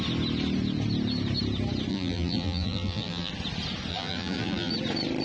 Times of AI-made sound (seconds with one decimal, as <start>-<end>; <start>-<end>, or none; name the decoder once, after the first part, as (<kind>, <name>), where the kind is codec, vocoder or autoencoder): 1.9-3.3 (vocoder, BigVGAN v2); 3.9-4.7